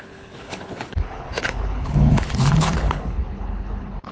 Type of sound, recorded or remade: remade